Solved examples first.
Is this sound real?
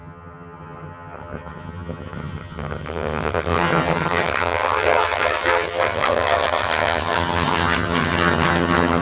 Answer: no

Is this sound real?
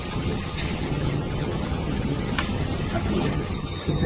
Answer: no